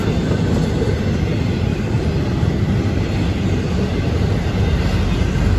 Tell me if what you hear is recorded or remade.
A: recorded